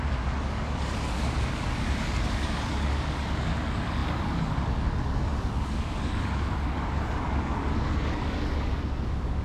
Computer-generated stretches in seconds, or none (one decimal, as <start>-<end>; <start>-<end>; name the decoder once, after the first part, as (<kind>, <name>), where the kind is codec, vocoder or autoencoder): 0.0-9.4 (codec, DAC)